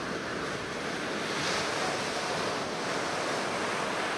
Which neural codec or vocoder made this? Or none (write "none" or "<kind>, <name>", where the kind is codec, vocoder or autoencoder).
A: none